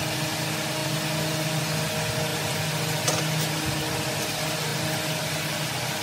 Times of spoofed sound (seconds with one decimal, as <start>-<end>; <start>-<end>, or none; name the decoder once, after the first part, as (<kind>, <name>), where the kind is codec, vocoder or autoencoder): none